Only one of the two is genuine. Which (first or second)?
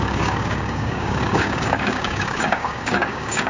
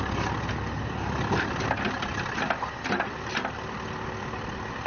second